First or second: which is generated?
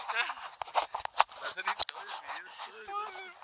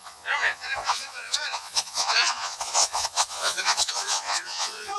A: second